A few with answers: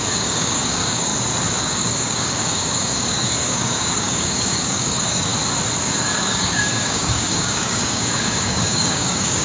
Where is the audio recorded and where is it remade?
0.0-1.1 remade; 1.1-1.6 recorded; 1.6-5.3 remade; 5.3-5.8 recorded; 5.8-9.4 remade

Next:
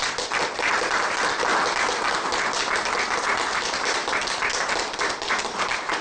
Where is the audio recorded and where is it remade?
0.0-6.0 recorded